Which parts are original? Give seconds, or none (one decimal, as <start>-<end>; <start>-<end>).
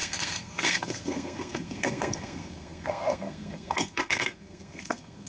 none